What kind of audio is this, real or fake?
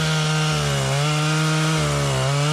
real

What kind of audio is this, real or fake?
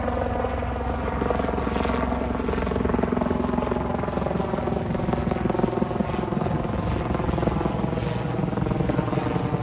real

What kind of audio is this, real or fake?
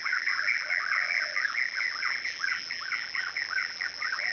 fake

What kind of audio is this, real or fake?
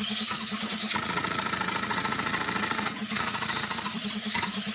fake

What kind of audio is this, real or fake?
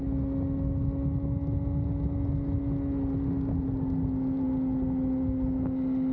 real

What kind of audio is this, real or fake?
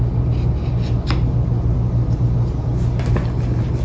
real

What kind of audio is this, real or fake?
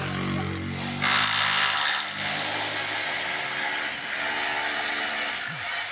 real